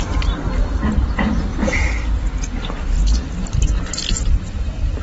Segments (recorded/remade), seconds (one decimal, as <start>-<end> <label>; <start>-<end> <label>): 0.0-1.5 remade; 1.5-4.1 recorded; 4.1-5.0 remade